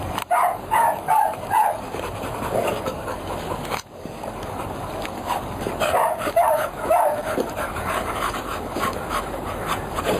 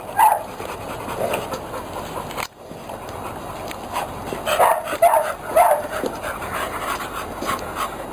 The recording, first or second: second